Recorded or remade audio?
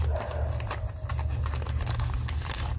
recorded